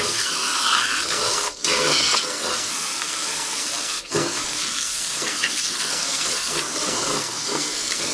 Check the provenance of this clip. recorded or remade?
remade